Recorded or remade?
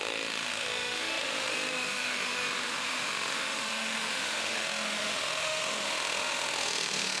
remade